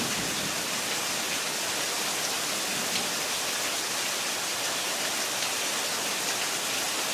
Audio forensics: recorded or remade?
recorded